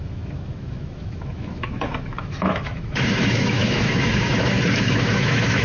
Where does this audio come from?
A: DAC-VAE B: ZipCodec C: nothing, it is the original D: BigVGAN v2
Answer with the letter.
A